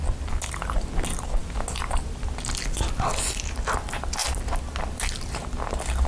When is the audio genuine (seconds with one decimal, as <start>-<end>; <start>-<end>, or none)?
0.0-6.1